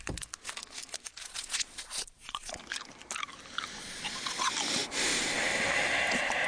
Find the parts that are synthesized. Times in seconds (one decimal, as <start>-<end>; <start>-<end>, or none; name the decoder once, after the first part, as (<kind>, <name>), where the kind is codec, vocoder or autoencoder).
1.2-2.6 (vocoder, Vocos); 3.8-4.5